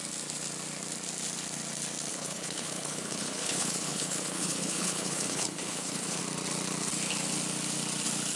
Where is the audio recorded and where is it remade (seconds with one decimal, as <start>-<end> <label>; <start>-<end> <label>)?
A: 0.0-2.1 recorded; 2.1-6.2 remade; 6.2-8.4 recorded